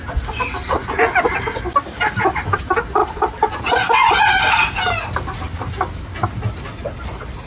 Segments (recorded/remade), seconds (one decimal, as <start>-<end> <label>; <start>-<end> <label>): 0.0-7.5 recorded